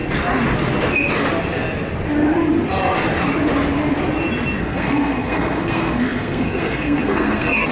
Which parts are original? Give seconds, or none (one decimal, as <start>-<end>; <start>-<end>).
0.0-4.6